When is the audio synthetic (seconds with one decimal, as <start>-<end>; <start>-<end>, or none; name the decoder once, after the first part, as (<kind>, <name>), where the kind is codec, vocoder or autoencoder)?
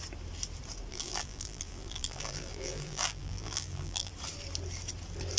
0.9-4.1 (vocoder, BigVGAN v2)